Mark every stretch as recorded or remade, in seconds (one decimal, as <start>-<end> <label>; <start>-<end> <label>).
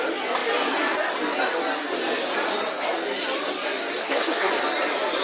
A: 0.0-4.0 recorded; 4.0-4.5 remade; 4.5-5.2 recorded